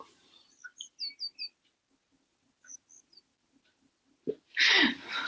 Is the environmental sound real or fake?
real